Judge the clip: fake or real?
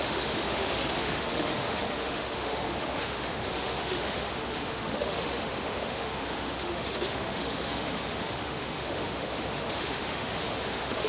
fake